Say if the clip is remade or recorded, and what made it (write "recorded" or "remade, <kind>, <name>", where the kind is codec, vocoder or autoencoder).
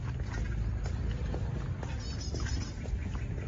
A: recorded